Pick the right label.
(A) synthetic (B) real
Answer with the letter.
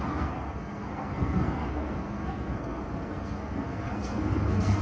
A